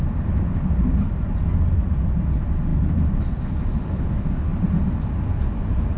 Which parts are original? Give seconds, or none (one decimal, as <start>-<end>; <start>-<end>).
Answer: 0.0-6.0